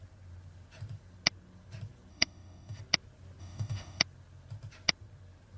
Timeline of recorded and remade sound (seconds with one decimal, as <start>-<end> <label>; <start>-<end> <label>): 0.0-2.1 recorded; 2.1-2.8 remade; 2.8-3.4 recorded; 3.4-4.0 remade; 4.0-5.6 recorded